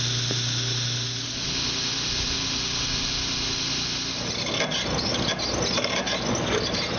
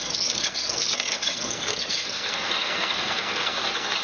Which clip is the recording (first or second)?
first